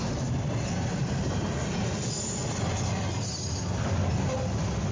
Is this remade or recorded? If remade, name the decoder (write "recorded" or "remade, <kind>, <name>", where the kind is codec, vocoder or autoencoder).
recorded